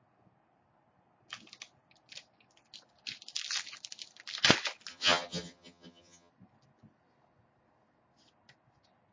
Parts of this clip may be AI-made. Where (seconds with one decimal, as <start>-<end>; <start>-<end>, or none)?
4.9-6.3